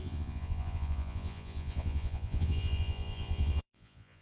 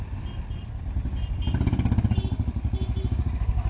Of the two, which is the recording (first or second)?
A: second